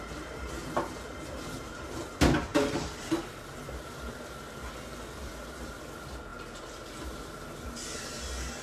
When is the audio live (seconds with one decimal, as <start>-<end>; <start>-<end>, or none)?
0.6-1.4

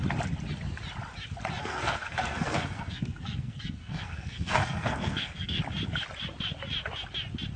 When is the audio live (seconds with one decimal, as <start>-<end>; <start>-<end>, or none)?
0.0-1.6; 5.6-7.6

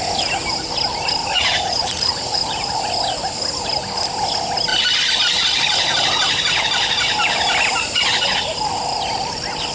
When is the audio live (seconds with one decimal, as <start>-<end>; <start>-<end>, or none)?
0.0-1.2; 2.8-9.7

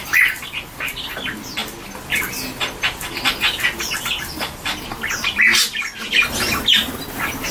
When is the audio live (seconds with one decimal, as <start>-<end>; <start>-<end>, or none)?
0.0-7.5

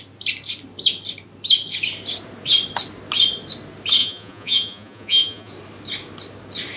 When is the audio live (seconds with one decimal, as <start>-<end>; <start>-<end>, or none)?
0.0-4.0; 5.5-6.8

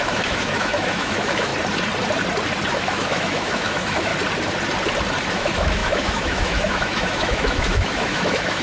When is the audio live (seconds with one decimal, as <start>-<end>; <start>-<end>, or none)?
1.5-2.7; 4.1-5.3